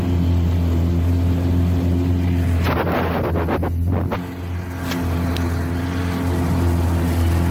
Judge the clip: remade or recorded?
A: recorded